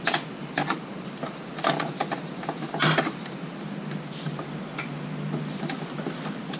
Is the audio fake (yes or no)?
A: no